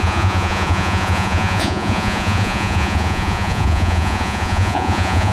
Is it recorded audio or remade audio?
remade